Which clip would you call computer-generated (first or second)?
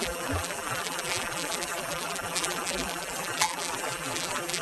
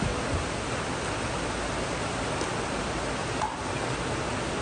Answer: first